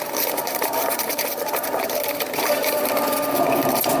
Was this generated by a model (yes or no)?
yes